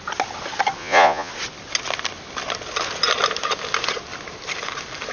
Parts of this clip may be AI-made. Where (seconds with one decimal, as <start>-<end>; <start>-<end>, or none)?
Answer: 0.8-1.3